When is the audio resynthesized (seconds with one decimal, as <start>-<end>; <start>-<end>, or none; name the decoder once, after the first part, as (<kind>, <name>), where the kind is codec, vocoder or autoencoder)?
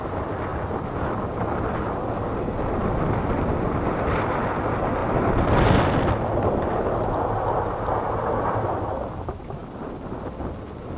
none